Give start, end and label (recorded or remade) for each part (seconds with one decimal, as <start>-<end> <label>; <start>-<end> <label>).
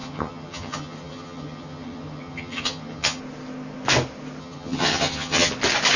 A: 0.0-3.2 remade; 3.2-4.4 recorded; 4.4-5.5 remade; 5.5-6.0 recorded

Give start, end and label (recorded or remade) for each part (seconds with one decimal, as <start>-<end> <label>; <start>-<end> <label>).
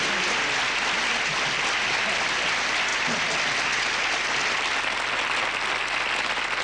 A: 0.0-6.6 recorded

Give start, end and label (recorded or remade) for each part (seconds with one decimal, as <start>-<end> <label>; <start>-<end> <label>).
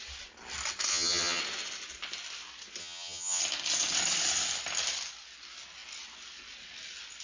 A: 0.0-0.9 recorded; 0.9-1.4 remade; 1.4-2.8 recorded; 2.8-3.4 remade; 3.4-7.2 recorded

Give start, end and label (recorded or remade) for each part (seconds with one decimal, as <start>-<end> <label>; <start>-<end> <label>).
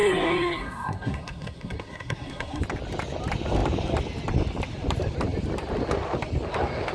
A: 0.0-2.6 remade; 2.6-6.9 recorded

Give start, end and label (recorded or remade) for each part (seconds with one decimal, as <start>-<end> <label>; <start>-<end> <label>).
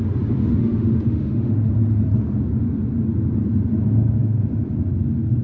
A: 0.0-0.4 recorded; 0.4-1.7 remade; 1.7-5.4 recorded